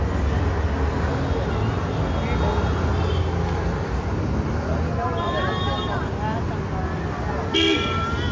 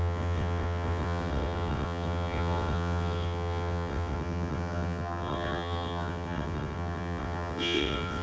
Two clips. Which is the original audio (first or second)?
first